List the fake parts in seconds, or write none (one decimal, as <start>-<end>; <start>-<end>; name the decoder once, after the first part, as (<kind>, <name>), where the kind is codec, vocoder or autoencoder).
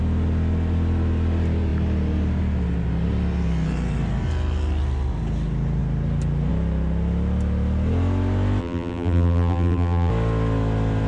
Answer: 8.6-10.1 (vocoder, BigVGAN v2)